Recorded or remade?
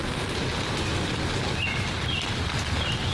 recorded